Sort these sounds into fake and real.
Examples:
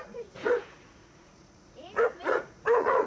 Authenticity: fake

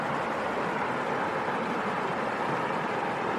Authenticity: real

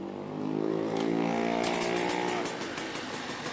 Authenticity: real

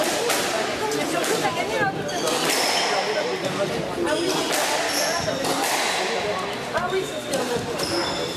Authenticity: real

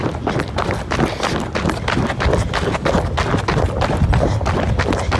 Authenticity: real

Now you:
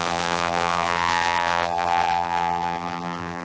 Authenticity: fake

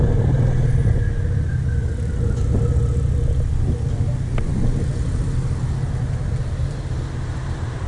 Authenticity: real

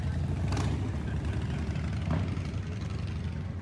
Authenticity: real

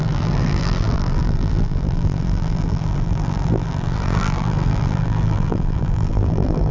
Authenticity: fake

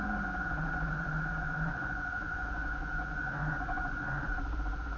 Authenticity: fake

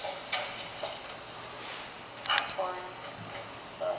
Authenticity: real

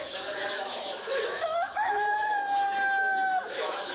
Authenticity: fake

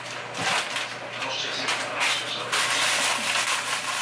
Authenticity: real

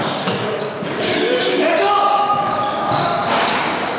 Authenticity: fake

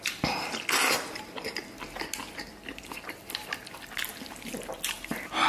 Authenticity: real